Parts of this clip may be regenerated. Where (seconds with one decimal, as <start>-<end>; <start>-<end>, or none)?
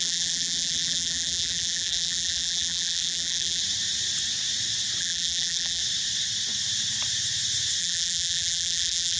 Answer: 0.0-3.6; 5.0-5.8; 7.8-9.2